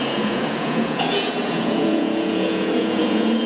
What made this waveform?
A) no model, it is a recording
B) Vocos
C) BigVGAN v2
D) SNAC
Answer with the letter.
B